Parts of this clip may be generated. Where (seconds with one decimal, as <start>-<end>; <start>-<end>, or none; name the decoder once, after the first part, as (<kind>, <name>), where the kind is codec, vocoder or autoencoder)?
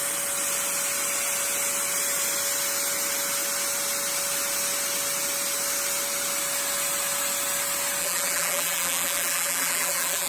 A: 8.0-10.3 (vocoder, BigVGAN v2)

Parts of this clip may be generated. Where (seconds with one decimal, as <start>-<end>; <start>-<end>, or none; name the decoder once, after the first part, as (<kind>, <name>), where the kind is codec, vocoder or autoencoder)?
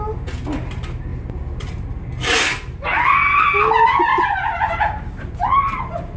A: none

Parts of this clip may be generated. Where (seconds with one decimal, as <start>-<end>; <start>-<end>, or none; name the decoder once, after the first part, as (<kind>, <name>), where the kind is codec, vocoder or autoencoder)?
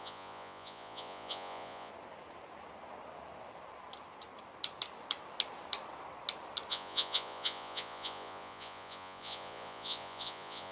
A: 0.0-1.9 (vocoder, Vocos); 6.7-10.7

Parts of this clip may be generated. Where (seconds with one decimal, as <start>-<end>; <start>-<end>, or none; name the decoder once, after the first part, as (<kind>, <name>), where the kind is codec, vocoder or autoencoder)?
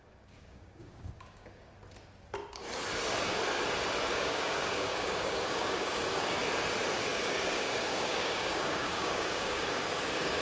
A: 0.0-1.8 (codec, DAC); 4.1-6.4; 6.9-10.4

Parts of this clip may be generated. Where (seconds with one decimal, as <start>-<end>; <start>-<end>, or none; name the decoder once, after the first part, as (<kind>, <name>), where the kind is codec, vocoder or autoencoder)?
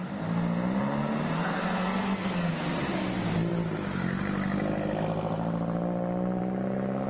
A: 1.4-2.5 (codec, SNAC)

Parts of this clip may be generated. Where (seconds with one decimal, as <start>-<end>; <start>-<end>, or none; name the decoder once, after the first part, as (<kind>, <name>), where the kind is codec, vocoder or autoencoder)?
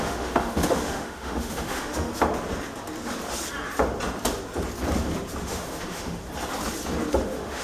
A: 0.0-2.1 (autoencoder, DAC-VAE); 5.4-6.2; 7.1-7.6